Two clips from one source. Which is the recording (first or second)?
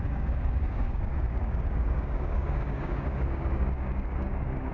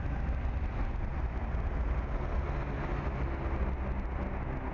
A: second